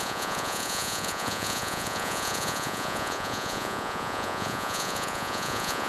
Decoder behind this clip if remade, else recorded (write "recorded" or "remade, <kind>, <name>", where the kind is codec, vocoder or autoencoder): remade, vocoder, Vocos